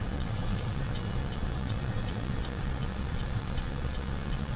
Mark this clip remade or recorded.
remade